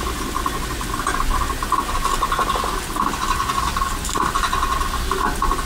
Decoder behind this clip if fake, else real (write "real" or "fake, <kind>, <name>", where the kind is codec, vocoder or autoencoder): real